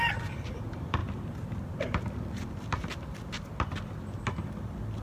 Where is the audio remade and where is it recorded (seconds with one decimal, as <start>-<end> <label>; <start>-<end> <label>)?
0.0-5.0 remade